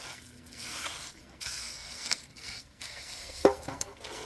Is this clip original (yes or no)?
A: no